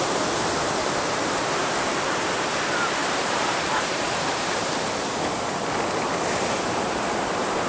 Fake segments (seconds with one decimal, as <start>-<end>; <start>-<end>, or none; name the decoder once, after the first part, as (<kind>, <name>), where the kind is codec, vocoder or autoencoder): 0.8-1.8 (vocoder, BigVGAN v2); 3.0-4.7